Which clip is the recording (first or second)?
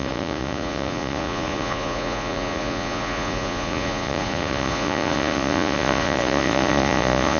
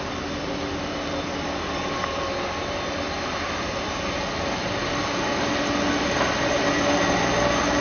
second